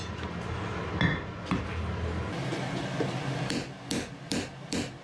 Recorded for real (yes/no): yes